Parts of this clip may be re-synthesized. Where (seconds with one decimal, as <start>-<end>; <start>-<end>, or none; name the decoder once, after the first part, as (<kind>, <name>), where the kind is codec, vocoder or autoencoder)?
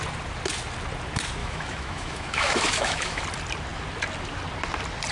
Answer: 1.4-3.2 (autoencoder, DAC-VAE)